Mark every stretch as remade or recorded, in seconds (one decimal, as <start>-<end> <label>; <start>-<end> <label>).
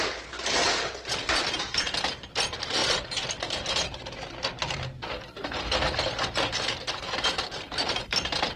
0.0-8.6 remade